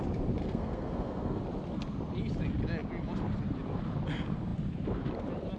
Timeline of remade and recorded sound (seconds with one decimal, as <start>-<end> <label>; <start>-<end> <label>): 0.0-0.4 recorded; 0.4-1.4 remade; 1.4-5.6 recorded